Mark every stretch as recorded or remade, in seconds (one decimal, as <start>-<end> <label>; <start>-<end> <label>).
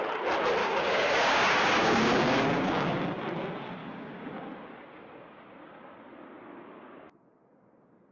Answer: 0.0-0.6 recorded; 0.6-3.2 remade; 3.2-3.8 recorded; 3.8-4.3 remade; 4.3-8.1 recorded